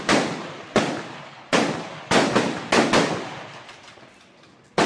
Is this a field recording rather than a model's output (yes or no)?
yes